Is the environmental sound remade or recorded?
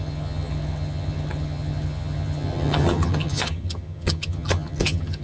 remade